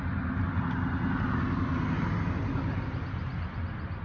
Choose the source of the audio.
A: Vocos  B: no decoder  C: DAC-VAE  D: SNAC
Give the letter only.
B